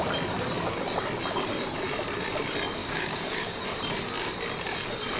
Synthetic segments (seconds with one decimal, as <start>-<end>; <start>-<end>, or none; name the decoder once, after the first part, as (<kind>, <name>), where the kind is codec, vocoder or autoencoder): 2.8-3.6 (codec, DAC)